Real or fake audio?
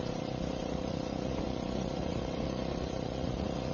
fake